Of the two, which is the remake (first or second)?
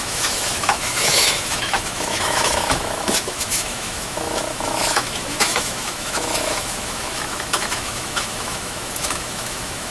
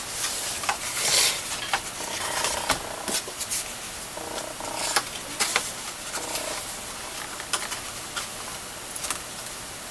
first